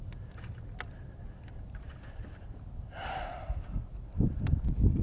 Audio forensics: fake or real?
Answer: fake